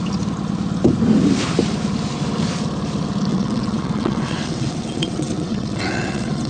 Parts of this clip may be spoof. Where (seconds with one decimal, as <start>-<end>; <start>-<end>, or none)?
3.3-6.5

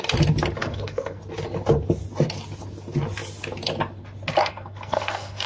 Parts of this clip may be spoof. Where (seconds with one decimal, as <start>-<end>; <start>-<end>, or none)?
0.6-1.2; 4.4-5.5

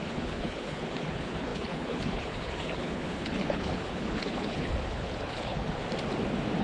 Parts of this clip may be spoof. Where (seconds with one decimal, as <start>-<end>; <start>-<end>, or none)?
0.0-5.8